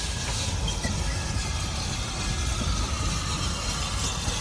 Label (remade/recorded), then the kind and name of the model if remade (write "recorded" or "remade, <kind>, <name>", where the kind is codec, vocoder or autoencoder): recorded